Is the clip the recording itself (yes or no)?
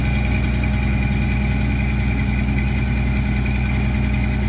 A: yes